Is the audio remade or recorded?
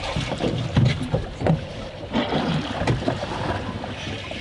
recorded